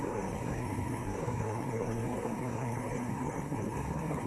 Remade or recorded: remade